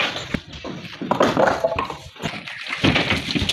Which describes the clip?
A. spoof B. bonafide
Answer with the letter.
B